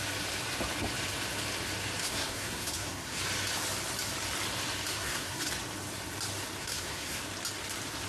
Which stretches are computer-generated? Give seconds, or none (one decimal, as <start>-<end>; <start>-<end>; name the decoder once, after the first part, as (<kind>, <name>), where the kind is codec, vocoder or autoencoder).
2.0-3.2 (codec, SNAC); 4.9-5.5; 6.6-7.2